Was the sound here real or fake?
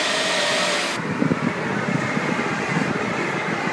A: real